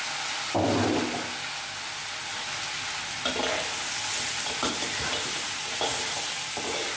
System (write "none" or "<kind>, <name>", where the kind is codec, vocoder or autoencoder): none